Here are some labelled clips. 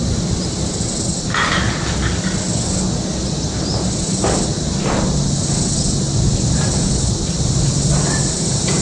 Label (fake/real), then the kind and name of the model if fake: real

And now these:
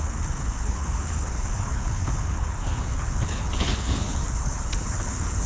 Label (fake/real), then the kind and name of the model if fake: fake, codec, HILCodec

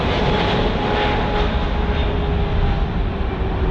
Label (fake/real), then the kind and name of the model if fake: real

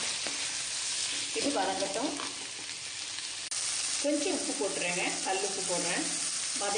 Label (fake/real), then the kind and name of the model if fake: real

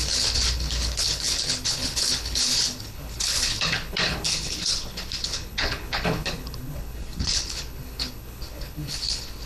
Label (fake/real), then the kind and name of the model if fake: fake, codec, HILCodec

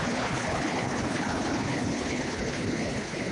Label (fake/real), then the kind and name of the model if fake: fake, codec, HILCodec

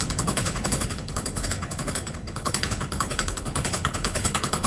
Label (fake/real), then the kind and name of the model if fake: fake, codec, HILCodec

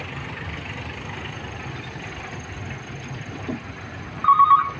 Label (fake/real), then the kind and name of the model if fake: real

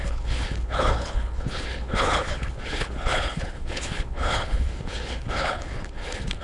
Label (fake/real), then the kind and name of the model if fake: fake, codec, HILCodec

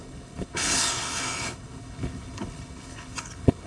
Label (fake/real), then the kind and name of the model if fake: fake, codec, HILCodec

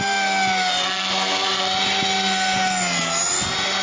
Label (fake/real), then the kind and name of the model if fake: real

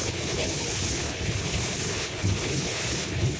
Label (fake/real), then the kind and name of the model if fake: fake, codec, HILCodec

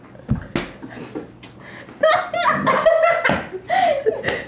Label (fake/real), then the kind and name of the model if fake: real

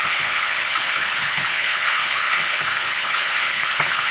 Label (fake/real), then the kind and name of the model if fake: fake, codec, HILCodec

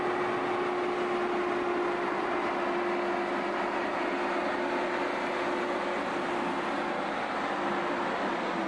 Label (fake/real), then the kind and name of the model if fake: real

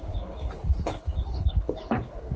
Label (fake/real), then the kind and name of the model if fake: fake, codec, HILCodec